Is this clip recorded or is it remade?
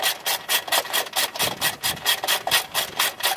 recorded